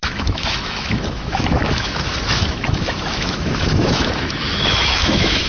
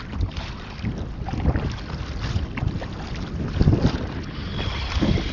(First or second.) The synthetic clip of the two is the first